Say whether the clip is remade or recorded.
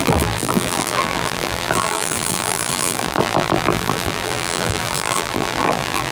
remade